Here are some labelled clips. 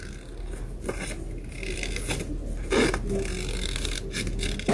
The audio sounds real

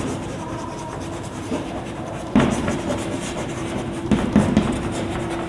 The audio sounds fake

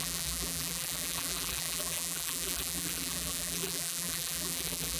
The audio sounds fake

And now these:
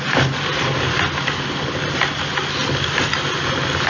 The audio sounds real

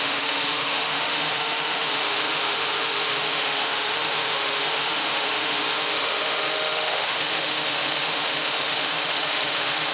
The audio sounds fake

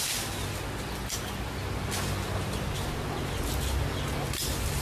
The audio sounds real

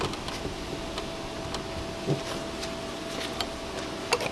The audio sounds real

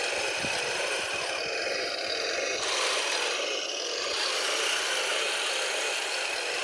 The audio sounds real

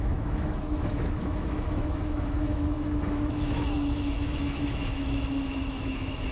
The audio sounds fake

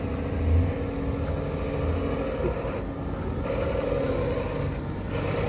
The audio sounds real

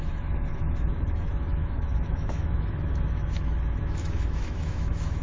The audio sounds fake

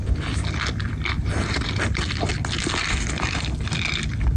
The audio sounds real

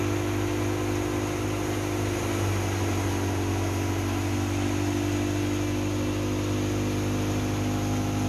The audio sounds real